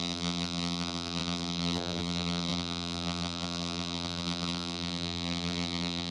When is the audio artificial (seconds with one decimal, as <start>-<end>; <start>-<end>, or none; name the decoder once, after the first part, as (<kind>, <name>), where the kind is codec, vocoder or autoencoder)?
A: 0.0-6.1 (vocoder, BigVGAN v2)